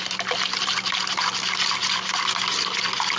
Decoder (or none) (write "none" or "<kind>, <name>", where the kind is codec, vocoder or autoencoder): none